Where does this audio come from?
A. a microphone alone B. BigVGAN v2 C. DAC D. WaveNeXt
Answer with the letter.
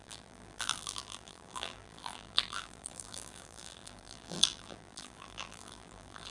B